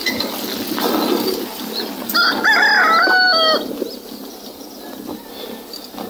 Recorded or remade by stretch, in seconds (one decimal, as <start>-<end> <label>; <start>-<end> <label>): 0.0-6.1 recorded